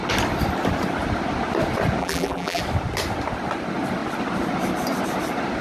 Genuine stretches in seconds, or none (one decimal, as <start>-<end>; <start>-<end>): 0.0-2.0; 2.6-5.6

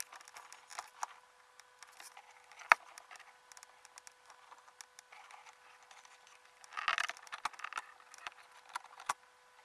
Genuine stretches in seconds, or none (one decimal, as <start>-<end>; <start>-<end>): 0.0-9.6

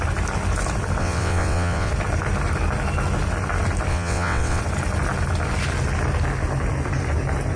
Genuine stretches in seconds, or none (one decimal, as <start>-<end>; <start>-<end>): 0.0-1.0; 1.9-3.9; 4.6-7.6

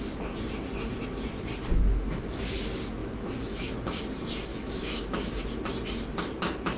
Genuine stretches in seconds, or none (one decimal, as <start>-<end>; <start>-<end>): 0.0-3.0; 3.7-4.5; 5.4-6.8

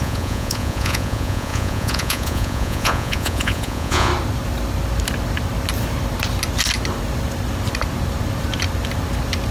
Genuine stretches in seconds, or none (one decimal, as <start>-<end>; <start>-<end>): 4.1-9.5